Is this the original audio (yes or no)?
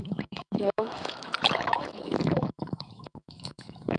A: no